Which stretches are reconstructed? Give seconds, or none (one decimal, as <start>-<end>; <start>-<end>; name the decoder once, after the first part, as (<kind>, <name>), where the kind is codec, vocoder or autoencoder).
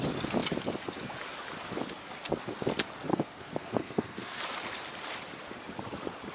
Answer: 3.1-4.4 (codec, SNAC)